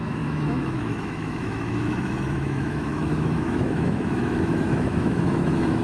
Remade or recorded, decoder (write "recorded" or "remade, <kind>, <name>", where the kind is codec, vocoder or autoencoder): remade, autoencoder, DAC-VAE